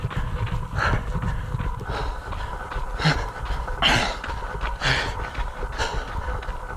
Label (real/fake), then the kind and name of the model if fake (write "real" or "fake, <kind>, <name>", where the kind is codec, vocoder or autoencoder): real